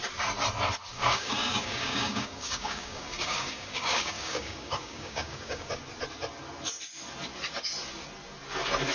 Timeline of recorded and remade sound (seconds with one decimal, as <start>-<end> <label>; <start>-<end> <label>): 0.0-0.9 recorded; 0.9-5.8 remade; 5.8-8.9 recorded